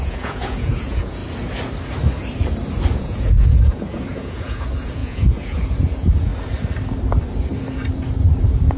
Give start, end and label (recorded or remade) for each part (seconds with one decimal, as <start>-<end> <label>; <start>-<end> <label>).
0.0-1.2 remade; 1.2-3.0 recorded; 3.0-6.3 remade; 6.3-8.4 recorded; 8.4-8.8 remade